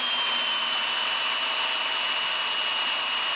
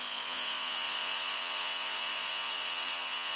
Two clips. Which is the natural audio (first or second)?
first